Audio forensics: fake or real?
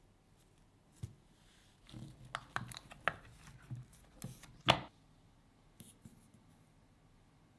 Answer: real